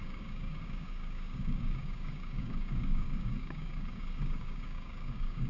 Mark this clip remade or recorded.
remade